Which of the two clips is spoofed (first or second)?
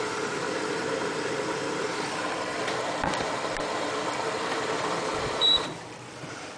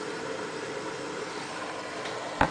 first